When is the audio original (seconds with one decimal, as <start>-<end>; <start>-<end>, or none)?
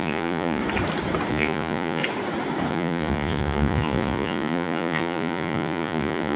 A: 0.6-1.3; 2.0-2.7